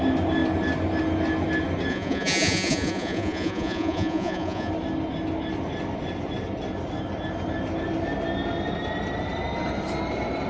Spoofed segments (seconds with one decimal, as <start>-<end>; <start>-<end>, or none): 1.9-4.7